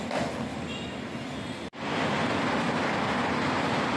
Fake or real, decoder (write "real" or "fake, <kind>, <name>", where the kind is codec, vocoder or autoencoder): fake, vocoder, BigVGAN v2